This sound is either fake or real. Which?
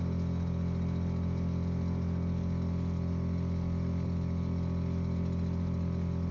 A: real